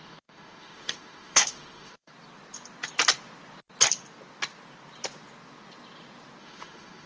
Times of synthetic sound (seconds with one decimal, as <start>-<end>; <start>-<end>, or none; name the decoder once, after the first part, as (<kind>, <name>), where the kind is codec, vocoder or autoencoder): 0.0-2.1 (autoencoder, DAC-VAE); 6.4-7.1